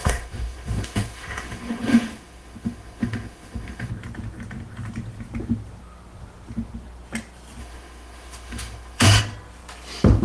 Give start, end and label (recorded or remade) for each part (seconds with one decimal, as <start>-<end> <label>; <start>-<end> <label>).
0.0-3.9 remade; 3.9-7.6 recorded; 7.6-9.2 remade; 9.2-10.2 recorded